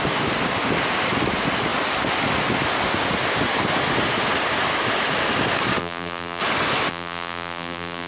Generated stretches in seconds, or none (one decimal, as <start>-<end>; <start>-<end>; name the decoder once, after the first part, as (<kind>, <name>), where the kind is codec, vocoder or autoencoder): 5.8-6.4 (vocoder, BigVGAN v2); 6.9-8.1